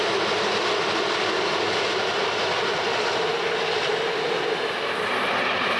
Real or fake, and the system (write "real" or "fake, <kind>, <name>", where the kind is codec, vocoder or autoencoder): real